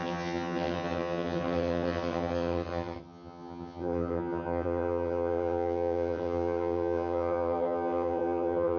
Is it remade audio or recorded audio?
remade